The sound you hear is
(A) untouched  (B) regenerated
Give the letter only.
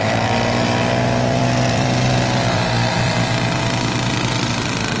B